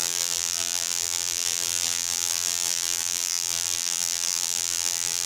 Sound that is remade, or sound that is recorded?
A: remade